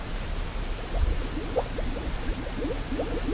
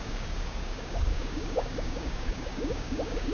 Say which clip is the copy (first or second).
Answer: second